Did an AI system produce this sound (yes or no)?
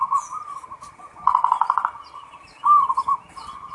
no